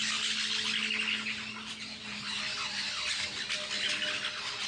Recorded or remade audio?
recorded